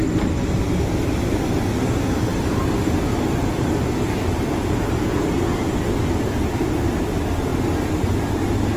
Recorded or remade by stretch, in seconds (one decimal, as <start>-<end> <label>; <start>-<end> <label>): 0.0-8.8 recorded